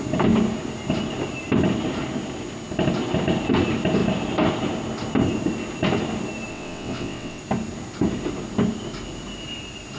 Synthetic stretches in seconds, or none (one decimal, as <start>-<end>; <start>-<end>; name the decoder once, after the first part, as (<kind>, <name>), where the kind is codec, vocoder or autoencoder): 6.5-7.4 (vocoder, WaveNeXt)